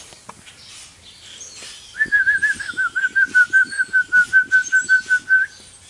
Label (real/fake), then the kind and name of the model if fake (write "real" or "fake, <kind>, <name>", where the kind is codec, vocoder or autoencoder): real